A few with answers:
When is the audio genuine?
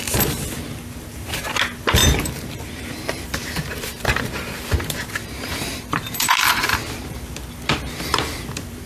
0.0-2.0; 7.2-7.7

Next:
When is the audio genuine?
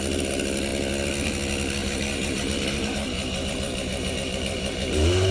0.0-1.8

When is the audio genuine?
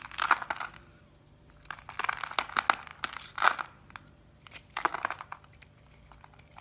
0.0-2.9; 5.9-6.6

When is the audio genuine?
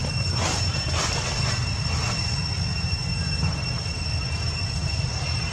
1.4-2.7; 3.5-4.8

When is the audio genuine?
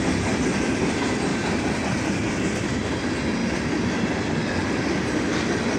0.0-1.3; 2.3-5.8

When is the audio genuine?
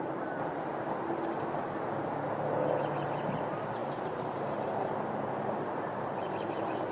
0.0-3.8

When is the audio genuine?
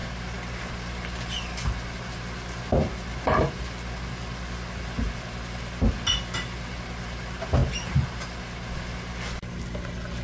0.0-10.2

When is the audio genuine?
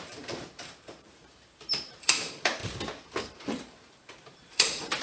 2.6-3.2